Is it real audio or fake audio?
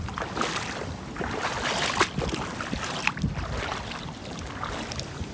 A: real